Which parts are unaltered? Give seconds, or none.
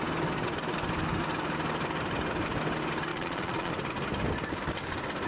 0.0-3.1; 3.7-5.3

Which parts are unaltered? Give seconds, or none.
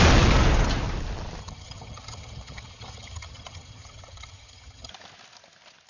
0.0-1.4; 4.9-5.9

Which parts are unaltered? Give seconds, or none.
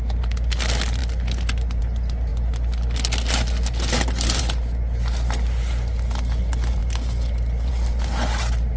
0.0-8.8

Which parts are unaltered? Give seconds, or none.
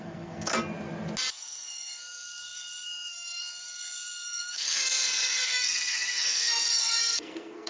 0.5-1.3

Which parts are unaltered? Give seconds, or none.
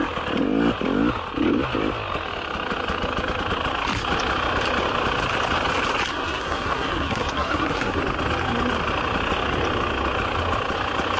0.0-6.1; 8.0-11.2